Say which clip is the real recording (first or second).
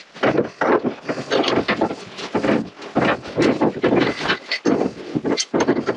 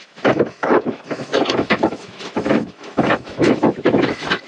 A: first